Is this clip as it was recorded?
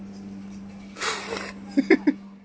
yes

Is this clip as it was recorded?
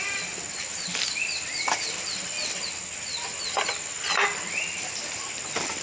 yes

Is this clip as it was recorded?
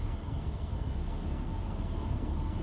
no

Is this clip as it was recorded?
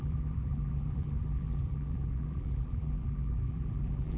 no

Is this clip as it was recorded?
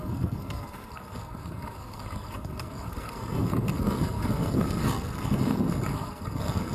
no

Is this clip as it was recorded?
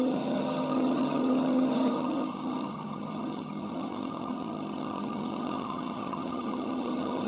no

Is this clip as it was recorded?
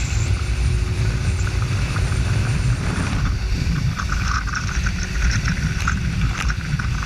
no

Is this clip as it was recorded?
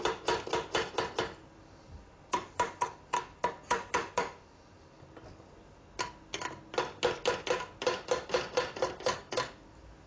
yes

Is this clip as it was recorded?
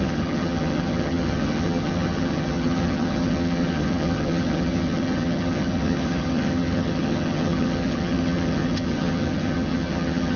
no